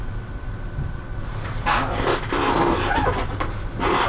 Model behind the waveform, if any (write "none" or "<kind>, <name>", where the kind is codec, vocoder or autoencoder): none